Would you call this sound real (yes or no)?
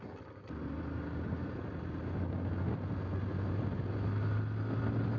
yes